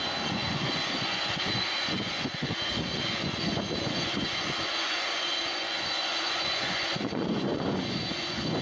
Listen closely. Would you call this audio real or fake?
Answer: fake